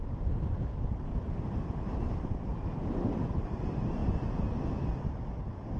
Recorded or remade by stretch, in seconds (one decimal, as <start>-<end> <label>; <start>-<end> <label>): 0.0-1.1 recorded; 1.1-2.0 remade; 2.0-2.5 recorded; 2.5-3.3 remade; 3.3-5.8 recorded